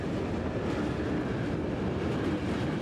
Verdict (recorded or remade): remade